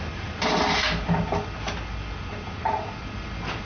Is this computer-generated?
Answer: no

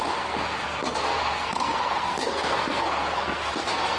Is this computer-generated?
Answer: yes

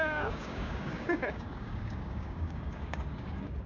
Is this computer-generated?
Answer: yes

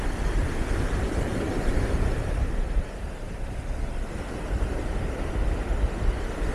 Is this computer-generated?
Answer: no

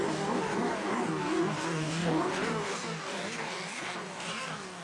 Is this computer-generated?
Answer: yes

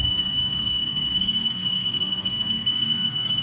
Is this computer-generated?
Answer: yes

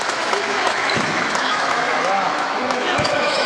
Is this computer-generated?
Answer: yes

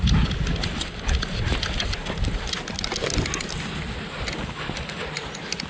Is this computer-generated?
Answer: no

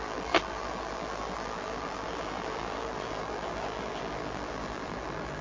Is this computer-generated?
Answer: yes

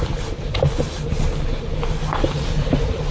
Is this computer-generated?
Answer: no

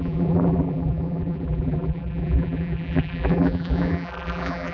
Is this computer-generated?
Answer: yes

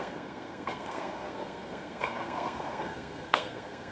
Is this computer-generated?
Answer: yes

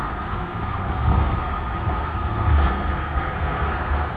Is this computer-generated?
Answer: yes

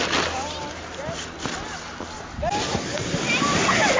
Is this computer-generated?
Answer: no